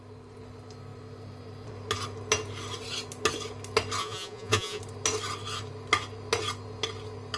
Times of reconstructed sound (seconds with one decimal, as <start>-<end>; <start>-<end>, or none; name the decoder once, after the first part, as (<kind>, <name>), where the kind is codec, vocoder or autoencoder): 4.0-4.8 (vocoder, Vocos)